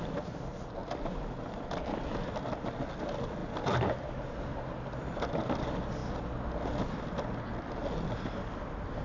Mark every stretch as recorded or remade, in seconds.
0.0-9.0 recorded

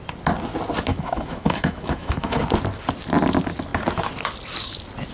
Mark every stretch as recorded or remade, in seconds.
0.0-0.9 recorded; 0.9-2.4 remade; 2.4-5.1 recorded